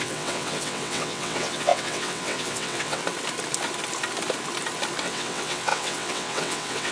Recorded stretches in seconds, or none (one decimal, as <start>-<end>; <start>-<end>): 3.0-5.0